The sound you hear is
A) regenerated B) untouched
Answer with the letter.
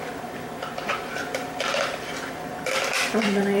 A